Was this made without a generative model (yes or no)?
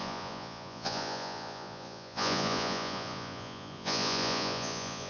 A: no